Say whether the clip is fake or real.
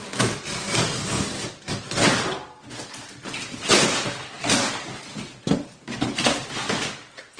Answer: real